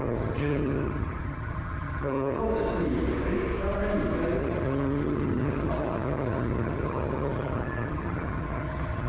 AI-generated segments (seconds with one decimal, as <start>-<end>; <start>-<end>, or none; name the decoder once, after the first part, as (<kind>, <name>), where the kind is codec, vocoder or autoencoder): 0.0-2.4 (vocoder, HiFi-GAN); 4.4-9.1